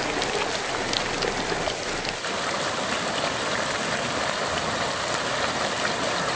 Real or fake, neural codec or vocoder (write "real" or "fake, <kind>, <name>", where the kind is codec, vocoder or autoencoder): real